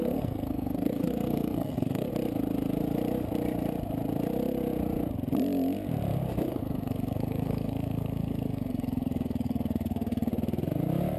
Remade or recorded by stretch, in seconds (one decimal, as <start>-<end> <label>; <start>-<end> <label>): 0.0-2.1 remade; 2.1-6.5 recorded; 6.5-10.3 remade; 10.3-11.2 recorded